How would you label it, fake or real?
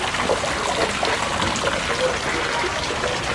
real